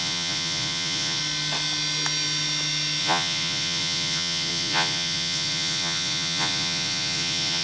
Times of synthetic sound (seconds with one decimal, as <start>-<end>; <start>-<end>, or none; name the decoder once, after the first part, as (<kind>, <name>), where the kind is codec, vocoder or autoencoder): 0.0-1.2 (vocoder, Vocos); 3.0-7.6